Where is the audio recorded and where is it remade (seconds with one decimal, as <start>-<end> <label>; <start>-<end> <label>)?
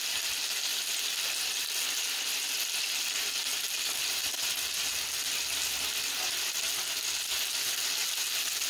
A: 0.0-8.7 recorded